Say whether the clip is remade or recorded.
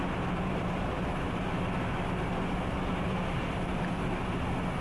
recorded